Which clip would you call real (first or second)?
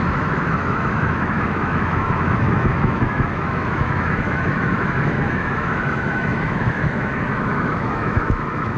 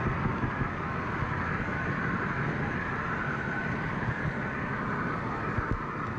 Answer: second